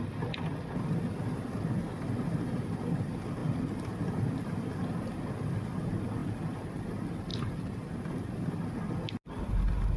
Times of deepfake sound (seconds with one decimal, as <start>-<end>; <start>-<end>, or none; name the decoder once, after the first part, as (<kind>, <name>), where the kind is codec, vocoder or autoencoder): 6.2-6.8 (vocoder, BigVGAN v2); 7.3-8.5